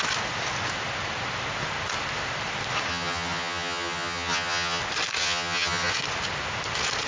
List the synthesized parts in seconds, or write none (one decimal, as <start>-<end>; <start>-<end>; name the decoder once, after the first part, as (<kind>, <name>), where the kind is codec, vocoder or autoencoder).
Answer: 2.9-4.8 (vocoder, HiFi-GAN); 5.2-5.9